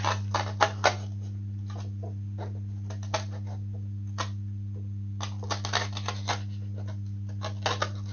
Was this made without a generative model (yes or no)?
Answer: yes